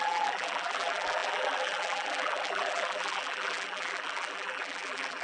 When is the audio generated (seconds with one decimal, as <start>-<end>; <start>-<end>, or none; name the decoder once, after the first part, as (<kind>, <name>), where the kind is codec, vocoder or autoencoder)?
0.0-5.2 (vocoder, BigVGAN v2)